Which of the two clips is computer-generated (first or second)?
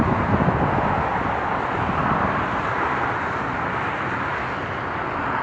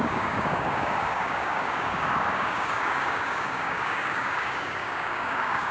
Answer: second